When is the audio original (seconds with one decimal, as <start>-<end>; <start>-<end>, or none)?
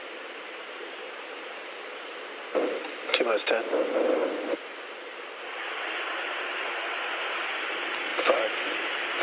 4.2-6.7; 8.1-9.2